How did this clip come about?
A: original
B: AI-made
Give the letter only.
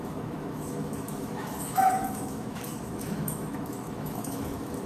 B